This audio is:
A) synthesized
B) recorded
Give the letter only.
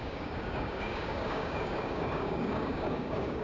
A